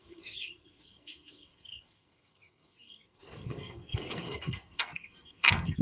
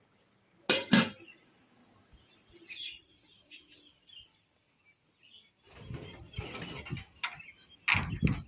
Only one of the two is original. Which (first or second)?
second